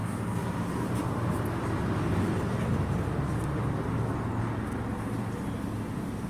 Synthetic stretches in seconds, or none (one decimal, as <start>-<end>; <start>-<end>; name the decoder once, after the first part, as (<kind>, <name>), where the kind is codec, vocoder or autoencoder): none